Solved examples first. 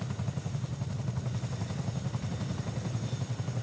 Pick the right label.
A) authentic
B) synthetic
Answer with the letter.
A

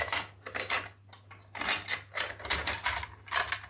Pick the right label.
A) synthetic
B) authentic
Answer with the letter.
B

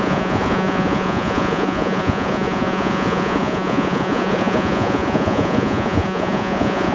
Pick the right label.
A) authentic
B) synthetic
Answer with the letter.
B